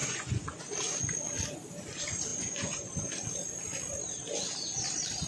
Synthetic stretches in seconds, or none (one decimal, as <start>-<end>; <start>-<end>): 0.0-0.6; 2.3-2.9